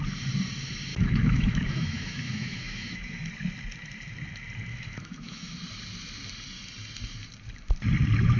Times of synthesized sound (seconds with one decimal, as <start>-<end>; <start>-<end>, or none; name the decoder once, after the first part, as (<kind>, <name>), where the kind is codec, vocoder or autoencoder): 0.9-3.3 (autoencoder, DAC-VAE); 4.7-5.5